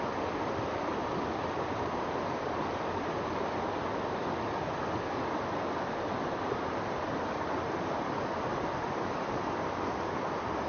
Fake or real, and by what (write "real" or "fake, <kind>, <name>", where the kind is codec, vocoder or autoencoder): real